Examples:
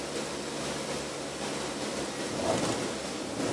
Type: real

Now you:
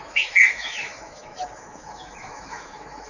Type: fake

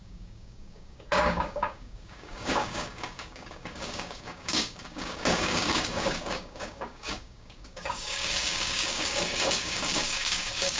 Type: fake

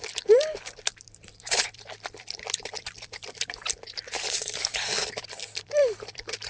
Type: fake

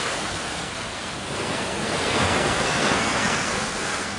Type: fake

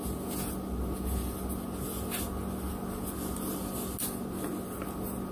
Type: real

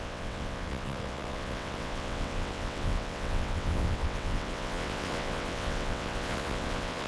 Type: fake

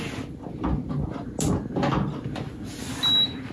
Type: real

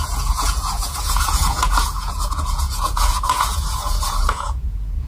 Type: fake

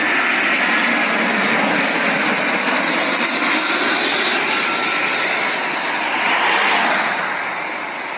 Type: real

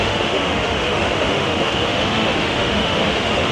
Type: fake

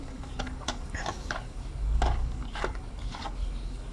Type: fake